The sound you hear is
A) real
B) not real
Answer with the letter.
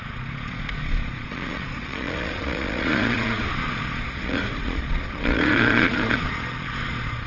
B